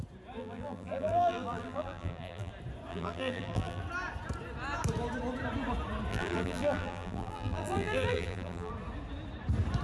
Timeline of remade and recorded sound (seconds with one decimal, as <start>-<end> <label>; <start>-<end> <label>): 0.0-0.4 recorded; 0.4-2.5 remade; 2.5-2.9 recorded; 2.9-3.8 remade; 3.8-6.1 recorded; 6.1-8.7 remade; 8.7-9.8 recorded